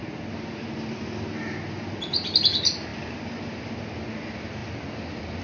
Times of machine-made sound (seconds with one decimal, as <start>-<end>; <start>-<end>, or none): none